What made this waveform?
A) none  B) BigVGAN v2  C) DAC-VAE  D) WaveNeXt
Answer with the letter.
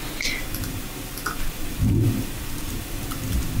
A